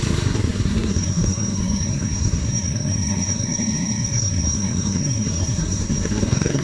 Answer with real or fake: fake